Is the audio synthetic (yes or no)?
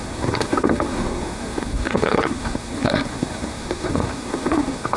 yes